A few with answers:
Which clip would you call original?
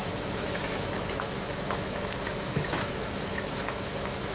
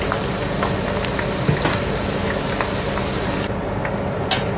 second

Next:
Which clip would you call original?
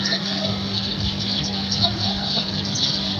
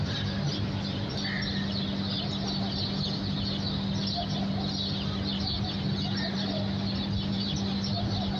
second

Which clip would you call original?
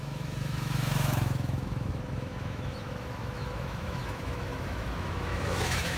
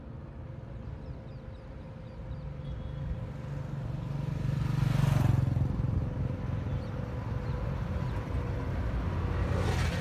second